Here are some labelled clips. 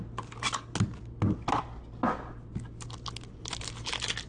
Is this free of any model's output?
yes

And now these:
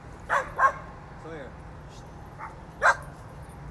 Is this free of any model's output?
yes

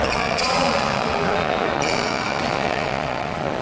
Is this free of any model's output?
no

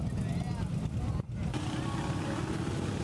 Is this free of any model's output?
yes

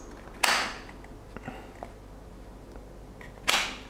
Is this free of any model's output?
yes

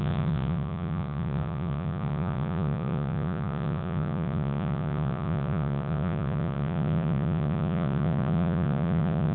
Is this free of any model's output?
no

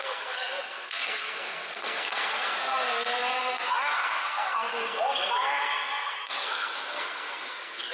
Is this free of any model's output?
no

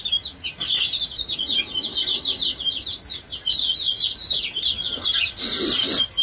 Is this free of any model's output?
yes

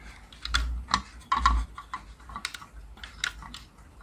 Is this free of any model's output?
yes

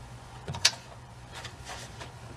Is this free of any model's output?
no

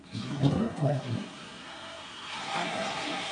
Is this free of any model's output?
no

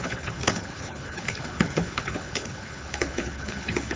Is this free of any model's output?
no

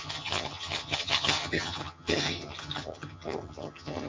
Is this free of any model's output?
no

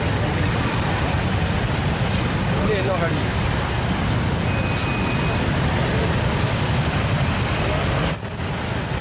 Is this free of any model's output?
yes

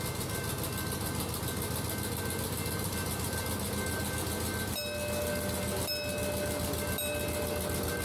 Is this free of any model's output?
yes